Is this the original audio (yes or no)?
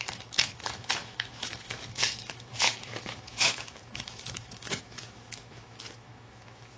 no